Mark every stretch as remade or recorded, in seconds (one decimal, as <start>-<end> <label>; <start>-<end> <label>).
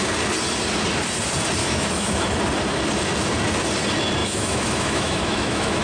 0.0-1.6 recorded; 1.6-2.4 remade; 2.4-4.2 recorded; 4.2-5.8 remade